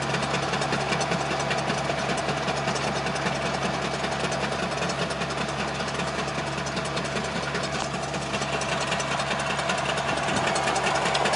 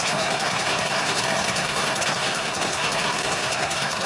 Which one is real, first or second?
first